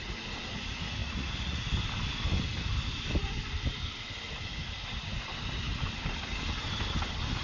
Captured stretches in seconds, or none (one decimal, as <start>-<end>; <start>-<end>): 0.0-1.0; 1.7-7.4

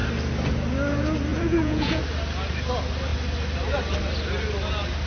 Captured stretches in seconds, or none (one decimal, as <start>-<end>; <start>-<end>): 0.0-1.3; 2.0-5.1

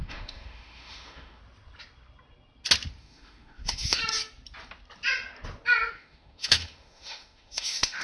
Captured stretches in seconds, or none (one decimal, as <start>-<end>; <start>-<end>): 1.4-3.0; 4.0-5.9

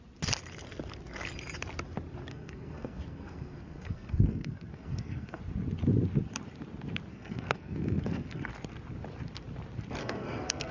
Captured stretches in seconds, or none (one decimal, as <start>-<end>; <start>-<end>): 0.0-2.3; 5.4-7.1; 8.5-10.0

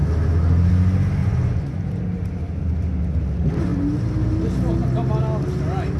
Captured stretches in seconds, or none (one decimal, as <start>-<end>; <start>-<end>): 0.0-1.2; 1.8-6.0

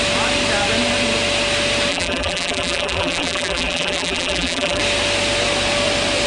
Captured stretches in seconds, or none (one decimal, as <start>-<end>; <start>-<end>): 0.0-1.9; 4.8-6.3

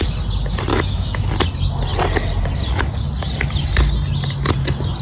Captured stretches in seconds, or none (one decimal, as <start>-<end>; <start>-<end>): 0.0-0.7; 1.3-5.0

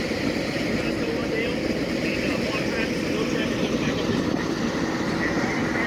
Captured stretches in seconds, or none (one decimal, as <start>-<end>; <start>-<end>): 0.0-5.9